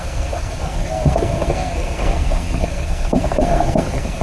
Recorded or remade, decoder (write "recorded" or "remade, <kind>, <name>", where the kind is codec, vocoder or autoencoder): remade, codec, SNAC